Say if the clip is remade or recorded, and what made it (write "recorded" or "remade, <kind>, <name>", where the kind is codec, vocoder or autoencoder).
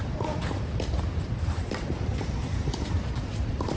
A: remade, vocoder, BigVGAN v2